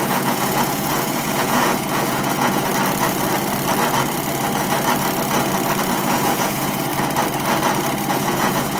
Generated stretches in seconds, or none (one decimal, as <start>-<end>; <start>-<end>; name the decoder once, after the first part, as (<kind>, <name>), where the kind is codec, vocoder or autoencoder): 0.0-2.7 (vocoder, Vocos); 5.9-6.9; 8.1-8.8